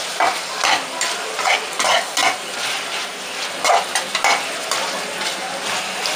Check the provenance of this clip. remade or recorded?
recorded